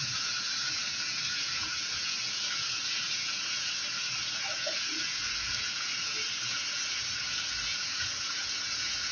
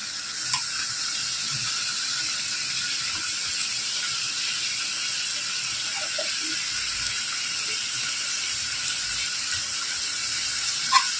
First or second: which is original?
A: second